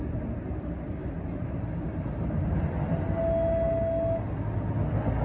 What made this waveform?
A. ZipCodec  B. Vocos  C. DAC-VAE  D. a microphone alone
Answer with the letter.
D